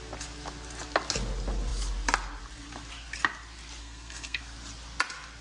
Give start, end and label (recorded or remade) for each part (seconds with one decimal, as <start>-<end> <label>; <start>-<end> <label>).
0.0-3.8 recorded; 3.8-4.4 remade; 4.4-5.4 recorded